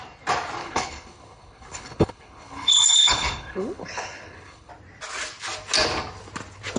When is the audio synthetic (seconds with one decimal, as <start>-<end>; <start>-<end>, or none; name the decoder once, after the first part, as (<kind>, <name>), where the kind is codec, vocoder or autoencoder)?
0.6-4.7 (codec, HILCodec)